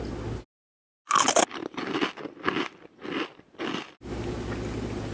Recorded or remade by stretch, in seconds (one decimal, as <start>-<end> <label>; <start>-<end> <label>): 0.0-5.1 recorded